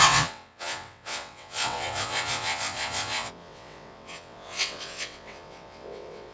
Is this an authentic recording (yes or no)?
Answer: no